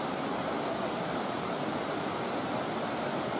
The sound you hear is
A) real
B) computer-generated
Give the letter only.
A